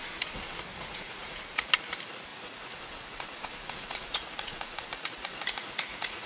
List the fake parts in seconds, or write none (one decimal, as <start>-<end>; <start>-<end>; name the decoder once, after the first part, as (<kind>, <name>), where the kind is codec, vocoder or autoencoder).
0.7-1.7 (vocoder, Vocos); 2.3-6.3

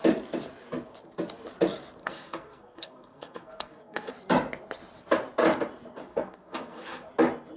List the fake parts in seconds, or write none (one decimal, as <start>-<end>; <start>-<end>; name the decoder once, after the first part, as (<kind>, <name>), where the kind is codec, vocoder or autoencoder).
2.0-4.1 (codec, SNAC); 6.1-7.1

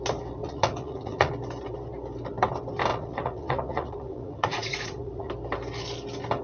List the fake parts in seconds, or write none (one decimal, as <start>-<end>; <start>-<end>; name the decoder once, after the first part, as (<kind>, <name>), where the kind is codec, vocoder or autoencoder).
0.4-1.3 (vocoder, Vocos); 2.9-5.3

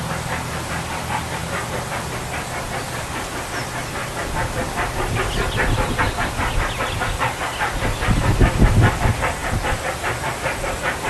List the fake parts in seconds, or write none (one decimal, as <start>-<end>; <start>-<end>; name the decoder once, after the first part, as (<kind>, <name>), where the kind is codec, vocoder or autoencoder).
none

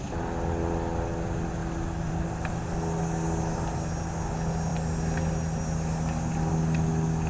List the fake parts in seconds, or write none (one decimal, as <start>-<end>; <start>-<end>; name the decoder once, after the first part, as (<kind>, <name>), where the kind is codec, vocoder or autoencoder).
1.6-3.0 (vocoder, BigVGAN v2)

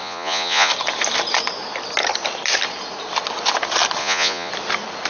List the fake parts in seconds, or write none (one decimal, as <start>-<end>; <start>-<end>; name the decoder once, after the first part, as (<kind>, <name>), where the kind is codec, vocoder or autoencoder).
0.0-0.7 (vocoder, Vocos); 4.0-4.5